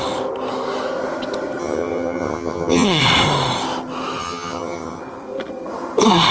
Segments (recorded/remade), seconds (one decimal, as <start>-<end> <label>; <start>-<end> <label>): 0.0-1.6 recorded; 1.6-3.0 remade; 3.0-4.2 recorded; 4.2-5.0 remade; 5.0-6.3 recorded